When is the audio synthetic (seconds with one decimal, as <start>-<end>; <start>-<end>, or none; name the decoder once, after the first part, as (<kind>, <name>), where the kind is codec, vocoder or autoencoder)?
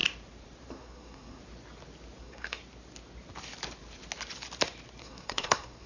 0.7-1.4 (codec, SNAC); 2.2-2.6; 5.0-5.9